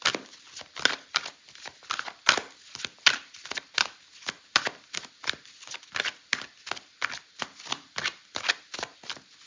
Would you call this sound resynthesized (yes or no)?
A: no